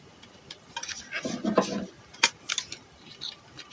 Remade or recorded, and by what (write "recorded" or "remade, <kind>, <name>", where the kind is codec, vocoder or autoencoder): recorded